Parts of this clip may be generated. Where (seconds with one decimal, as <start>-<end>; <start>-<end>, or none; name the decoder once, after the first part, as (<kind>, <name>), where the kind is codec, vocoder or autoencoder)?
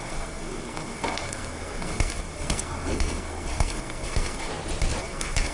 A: 0.0-4.5 (codec, SNAC); 5.0-5.5